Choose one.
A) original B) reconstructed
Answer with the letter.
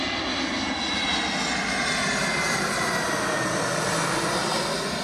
A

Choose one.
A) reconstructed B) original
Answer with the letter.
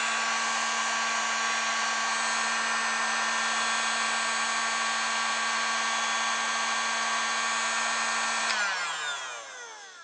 B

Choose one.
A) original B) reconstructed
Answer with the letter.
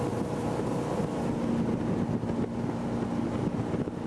A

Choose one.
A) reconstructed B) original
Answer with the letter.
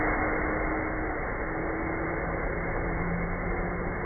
B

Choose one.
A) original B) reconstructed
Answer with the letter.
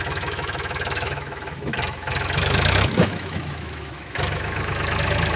B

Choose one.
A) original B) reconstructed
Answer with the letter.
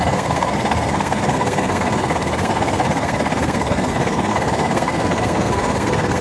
B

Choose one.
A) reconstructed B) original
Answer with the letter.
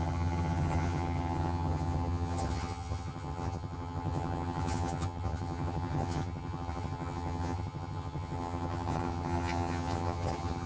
A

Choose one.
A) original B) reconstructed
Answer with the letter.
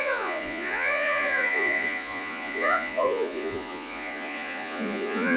B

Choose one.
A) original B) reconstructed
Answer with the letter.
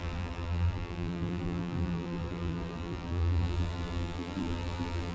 B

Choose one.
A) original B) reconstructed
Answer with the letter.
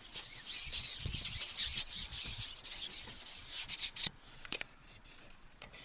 B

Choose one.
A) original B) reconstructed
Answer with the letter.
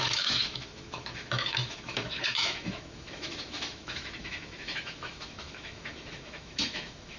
B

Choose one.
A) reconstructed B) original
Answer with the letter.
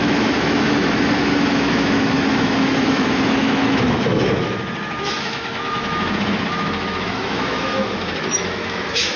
A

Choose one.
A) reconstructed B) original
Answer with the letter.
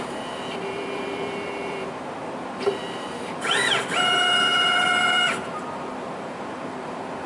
A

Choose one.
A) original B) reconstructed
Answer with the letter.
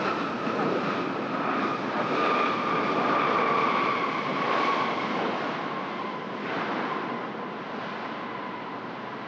A